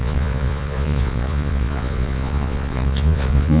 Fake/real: fake